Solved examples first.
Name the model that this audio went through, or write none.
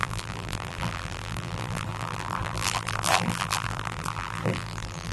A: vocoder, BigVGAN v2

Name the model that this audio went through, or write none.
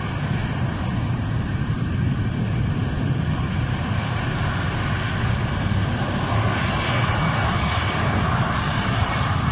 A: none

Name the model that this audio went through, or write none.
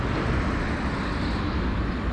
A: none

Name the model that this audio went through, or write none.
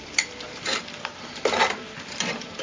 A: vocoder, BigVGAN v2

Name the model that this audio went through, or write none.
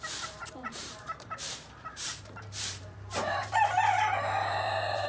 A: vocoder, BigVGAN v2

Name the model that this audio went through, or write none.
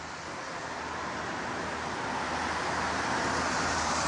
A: none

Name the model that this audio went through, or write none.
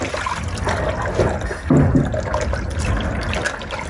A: none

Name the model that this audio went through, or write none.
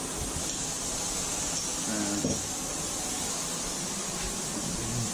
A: none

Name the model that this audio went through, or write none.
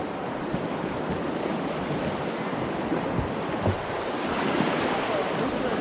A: vocoder, BigVGAN v2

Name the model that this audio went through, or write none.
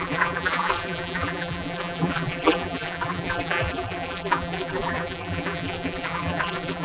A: vocoder, BigVGAN v2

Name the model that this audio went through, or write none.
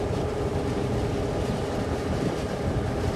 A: vocoder, BigVGAN v2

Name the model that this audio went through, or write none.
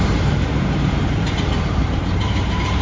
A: vocoder, BigVGAN v2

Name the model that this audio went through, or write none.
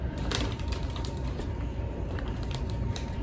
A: vocoder, BigVGAN v2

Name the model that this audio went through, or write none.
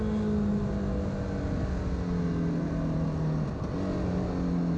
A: none